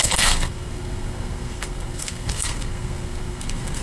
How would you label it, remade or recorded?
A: remade